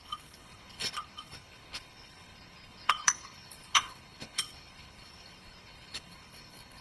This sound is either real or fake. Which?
fake